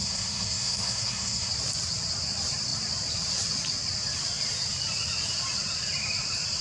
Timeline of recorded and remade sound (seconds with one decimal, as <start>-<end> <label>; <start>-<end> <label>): 0.0-1.5 remade; 1.5-6.6 recorded

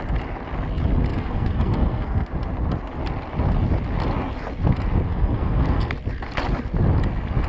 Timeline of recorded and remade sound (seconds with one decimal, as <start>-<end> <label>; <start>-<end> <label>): 0.0-1.1 recorded; 1.1-2.3 remade; 2.3-5.1 recorded; 5.1-5.9 remade; 5.9-7.5 recorded

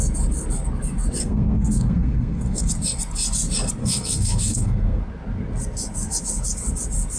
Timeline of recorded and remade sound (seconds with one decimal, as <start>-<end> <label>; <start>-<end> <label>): 0.0-1.2 recorded; 1.2-2.7 remade; 2.7-3.8 recorded; 3.8-5.0 remade; 5.0-7.2 recorded

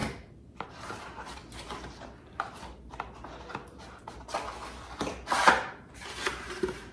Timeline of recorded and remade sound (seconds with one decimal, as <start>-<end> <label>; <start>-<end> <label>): 0.0-0.7 recorded; 0.7-1.4 remade; 1.4-5.5 recorded; 5.5-6.9 remade

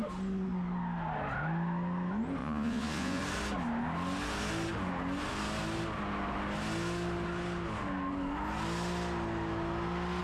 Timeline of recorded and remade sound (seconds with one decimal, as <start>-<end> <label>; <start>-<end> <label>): 0.0-2.4 recorded; 2.4-3.2 remade; 3.2-10.2 recorded

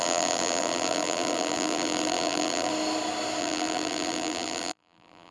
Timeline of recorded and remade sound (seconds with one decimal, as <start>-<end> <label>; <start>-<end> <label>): 0.0-2.7 remade; 2.7-3.4 recorded; 3.4-5.3 remade

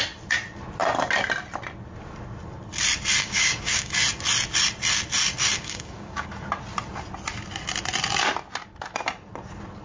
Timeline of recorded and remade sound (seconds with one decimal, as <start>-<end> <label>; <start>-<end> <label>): 0.0-3.2 recorded; 3.2-3.9 remade; 3.9-5.6 recorded; 5.6-6.3 remade; 6.3-9.8 recorded